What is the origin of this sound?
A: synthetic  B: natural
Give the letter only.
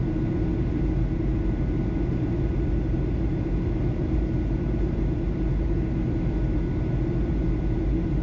B